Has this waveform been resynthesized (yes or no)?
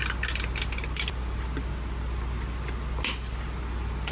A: no